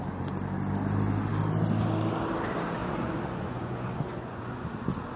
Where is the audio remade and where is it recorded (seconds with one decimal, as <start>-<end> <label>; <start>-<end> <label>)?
0.0-2.8 recorded; 2.8-4.7 remade; 4.7-5.2 recorded